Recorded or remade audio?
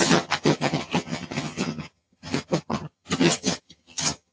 remade